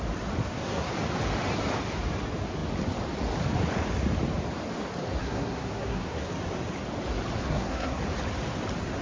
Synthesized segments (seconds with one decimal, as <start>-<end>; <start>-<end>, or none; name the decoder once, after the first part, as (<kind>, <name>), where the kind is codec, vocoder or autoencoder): 0.4-0.9 (codec, SNAC); 5.2-6.3; 7.4-8.0

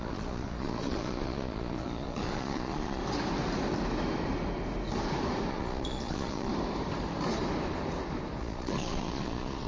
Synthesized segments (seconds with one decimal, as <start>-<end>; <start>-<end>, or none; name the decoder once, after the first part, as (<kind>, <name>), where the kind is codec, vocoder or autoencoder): 0.0-3.0 (vocoder, Vocos); 5.5-6.5; 8.4-9.7

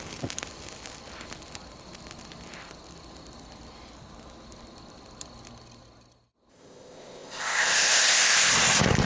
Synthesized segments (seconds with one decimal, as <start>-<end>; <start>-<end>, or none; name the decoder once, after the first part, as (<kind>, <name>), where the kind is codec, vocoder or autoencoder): 6.5-8.5 (codec, ZipCodec)

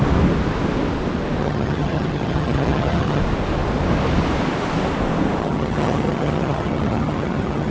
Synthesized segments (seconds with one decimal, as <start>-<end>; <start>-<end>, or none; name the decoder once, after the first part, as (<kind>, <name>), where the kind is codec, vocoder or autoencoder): 1.4-3.2 (vocoder, HiFi-GAN); 5.4-7.7

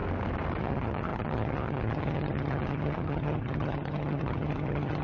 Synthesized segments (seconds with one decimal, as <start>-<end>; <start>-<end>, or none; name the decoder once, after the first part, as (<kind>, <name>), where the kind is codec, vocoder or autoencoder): 0.6-5.0 (vocoder, HiFi-GAN)